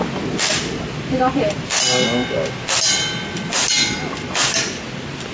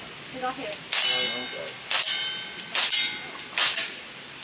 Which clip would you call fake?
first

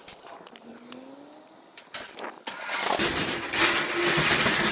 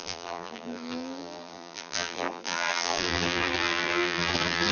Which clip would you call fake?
second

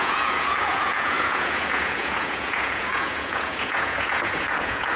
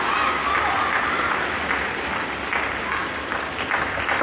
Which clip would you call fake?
first